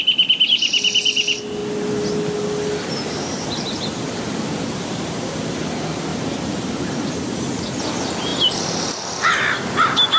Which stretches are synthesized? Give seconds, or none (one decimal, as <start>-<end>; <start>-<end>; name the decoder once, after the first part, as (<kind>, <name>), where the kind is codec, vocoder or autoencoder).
0.0-8.3 (vocoder, BigVGAN v2); 9.3-10.2

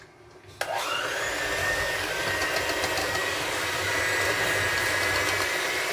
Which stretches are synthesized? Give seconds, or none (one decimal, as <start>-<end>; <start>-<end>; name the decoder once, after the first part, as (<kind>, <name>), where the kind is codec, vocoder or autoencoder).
1.6-2.2 (codec, DAC); 3.0-4.0

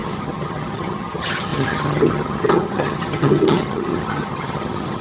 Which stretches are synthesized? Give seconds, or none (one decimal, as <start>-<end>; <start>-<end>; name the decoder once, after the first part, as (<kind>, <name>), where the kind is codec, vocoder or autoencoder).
0.0-5.0 (vocoder, HiFi-GAN)

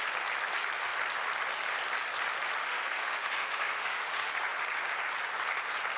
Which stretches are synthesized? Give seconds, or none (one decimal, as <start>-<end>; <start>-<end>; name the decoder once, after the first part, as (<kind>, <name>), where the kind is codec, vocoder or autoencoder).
2.6-4.3 (autoencoder, DAC-VAE)

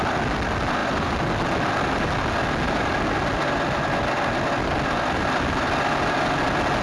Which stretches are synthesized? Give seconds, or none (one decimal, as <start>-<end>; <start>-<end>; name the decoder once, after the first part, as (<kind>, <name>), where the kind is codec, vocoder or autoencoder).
none